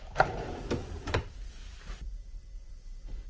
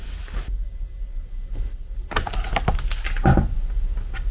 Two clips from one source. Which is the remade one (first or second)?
first